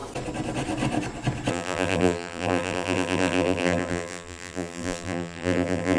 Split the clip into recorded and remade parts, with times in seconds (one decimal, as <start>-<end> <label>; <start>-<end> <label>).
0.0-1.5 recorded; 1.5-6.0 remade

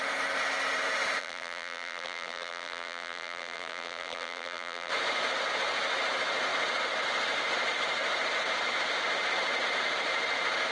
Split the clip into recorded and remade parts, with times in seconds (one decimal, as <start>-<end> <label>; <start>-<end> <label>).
0.0-1.2 recorded; 1.2-4.9 remade; 4.9-10.7 recorded

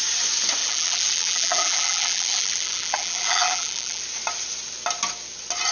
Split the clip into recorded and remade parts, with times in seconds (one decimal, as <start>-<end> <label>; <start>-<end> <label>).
0.0-0.6 recorded; 0.6-4.0 remade; 4.0-5.7 recorded